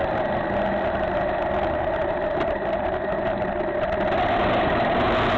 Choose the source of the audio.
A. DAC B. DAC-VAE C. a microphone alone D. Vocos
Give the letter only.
C